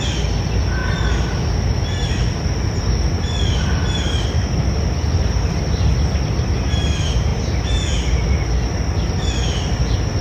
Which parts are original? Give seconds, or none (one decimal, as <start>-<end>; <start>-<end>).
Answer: 0.0-10.2